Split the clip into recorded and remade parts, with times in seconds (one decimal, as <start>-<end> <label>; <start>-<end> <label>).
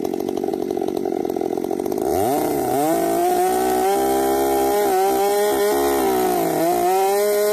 0.0-0.5 recorded; 0.5-1.2 remade; 1.2-7.5 recorded